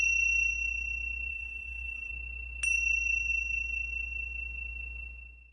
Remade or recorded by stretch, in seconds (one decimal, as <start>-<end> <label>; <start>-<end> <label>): 0.0-1.3 recorded; 1.3-2.1 remade; 2.1-5.5 recorded

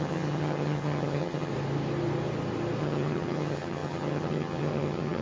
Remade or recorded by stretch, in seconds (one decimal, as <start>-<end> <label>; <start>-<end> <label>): 0.0-1.5 remade; 1.5-2.8 recorded; 2.8-5.2 remade

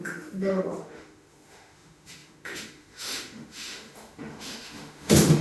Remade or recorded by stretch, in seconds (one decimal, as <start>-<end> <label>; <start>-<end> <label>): 0.0-5.4 remade

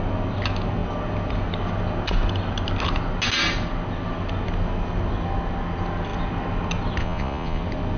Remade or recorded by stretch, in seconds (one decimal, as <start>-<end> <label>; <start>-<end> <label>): 0.0-7.0 recorded; 7.0-7.6 remade; 7.6-8.0 recorded

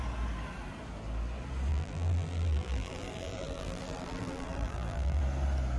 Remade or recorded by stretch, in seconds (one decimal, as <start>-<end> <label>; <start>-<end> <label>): 0.0-1.7 recorded; 1.7-5.2 remade; 5.2-5.8 recorded